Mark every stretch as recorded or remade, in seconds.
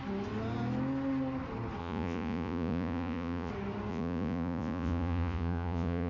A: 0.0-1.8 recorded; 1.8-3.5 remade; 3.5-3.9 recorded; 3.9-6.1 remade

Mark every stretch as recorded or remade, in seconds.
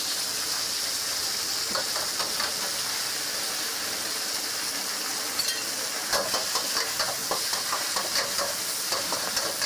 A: 0.0-9.7 recorded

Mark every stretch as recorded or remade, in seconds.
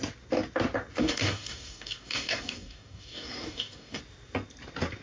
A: 0.0-1.0 recorded; 1.0-4.0 remade; 4.0-5.0 recorded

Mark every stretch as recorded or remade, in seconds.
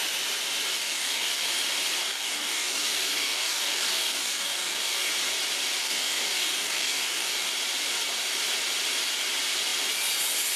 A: 0.0-0.7 recorded; 0.7-1.5 remade; 1.5-2.0 recorded; 2.0-5.1 remade; 5.1-5.8 recorded; 5.8-7.5 remade; 7.5-10.6 recorded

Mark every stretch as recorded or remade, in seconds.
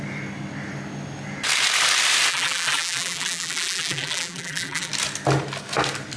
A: 0.0-2.3 recorded; 2.3-4.9 remade; 4.9-6.2 recorded